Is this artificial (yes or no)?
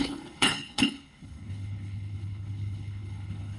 yes